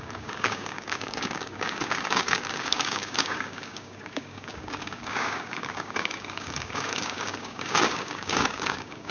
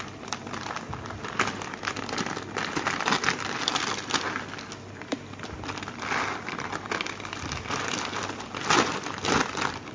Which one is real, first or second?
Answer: second